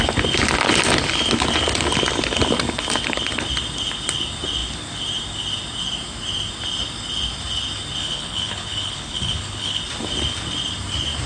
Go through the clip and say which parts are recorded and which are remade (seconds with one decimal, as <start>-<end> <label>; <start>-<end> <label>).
0.0-8.0 recorded; 8.0-9.8 remade; 9.8-11.3 recorded